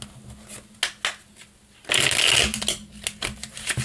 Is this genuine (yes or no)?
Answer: yes